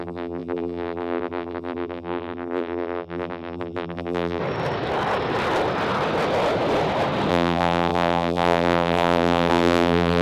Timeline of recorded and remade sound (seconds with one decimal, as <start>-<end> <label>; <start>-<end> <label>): 0.0-4.4 remade; 4.4-7.3 recorded; 7.3-10.2 remade